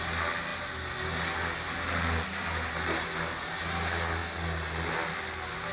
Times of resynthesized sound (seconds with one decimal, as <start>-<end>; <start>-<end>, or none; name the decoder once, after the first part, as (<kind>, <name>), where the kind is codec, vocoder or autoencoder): none